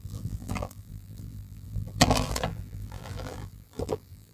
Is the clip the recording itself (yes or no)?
no